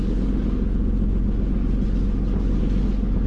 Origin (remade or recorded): recorded